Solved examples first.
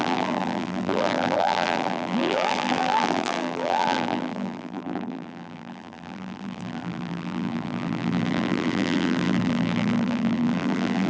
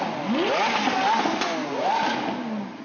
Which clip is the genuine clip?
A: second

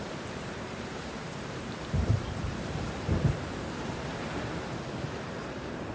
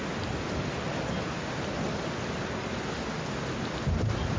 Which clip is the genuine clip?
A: second